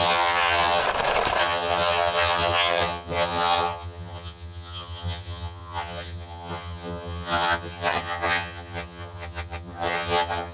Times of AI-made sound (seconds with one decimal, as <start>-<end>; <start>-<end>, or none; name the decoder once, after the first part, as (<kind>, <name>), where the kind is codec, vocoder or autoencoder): 0.0-0.8 (vocoder, HiFi-GAN); 1.4-10.5